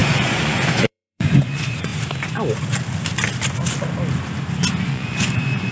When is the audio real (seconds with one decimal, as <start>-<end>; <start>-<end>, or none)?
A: 1.9-4.9